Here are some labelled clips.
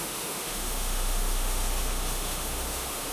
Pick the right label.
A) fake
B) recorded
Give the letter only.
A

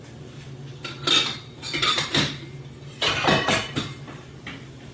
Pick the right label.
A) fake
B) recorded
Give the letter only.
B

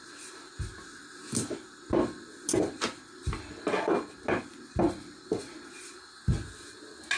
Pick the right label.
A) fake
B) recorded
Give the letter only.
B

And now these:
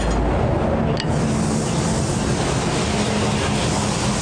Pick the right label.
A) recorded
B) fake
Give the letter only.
A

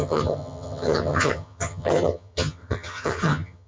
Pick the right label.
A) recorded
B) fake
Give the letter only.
B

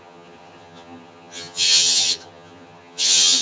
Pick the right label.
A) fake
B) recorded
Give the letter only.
A